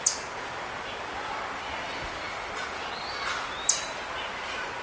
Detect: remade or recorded recorded